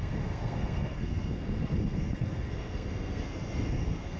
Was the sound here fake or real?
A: fake